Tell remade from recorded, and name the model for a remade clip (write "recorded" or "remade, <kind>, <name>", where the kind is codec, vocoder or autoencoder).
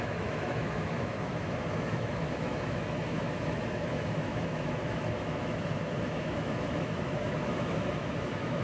remade, autoencoder, DAC-VAE